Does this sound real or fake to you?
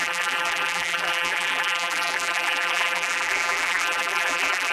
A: fake